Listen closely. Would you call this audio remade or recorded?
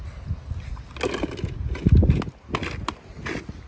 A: recorded